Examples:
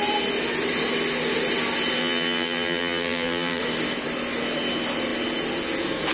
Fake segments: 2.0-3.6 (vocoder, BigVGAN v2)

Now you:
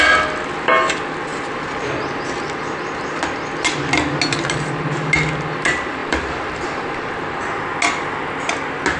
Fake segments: 6.0-7.4 (vocoder, BigVGAN v2)

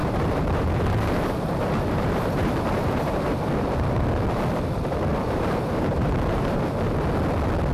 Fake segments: 0.0-4.2 (vocoder, BigVGAN v2); 5.1-6.6

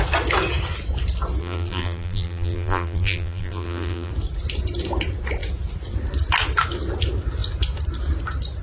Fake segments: 1.4-4.1 (vocoder, BigVGAN v2)

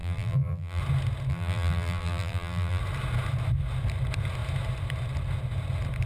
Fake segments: 0.0-0.8 (vocoder, BigVGAN v2); 1.3-2.8

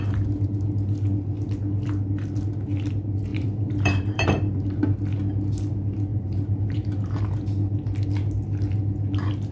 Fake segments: 3.3-4.8 (vocoder, BigVGAN v2); 6.1-7.2